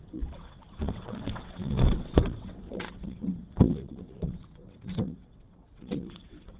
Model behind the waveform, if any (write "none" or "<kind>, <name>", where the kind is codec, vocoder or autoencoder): vocoder, WaveNeXt